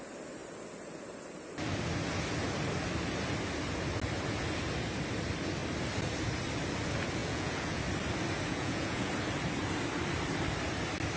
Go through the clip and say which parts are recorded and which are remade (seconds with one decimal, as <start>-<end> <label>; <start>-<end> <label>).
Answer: 0.0-7.2 recorded; 7.2-7.8 remade; 7.8-8.5 recorded; 8.5-9.1 remade; 9.1-11.2 recorded